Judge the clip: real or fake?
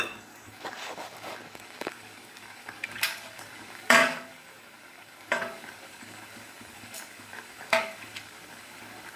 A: fake